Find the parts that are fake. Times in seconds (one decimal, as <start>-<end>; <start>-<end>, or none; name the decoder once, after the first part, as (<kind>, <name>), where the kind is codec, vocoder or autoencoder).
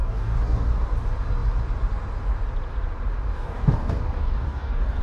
0.0-0.7 (codec, DAC); 3.3-5.0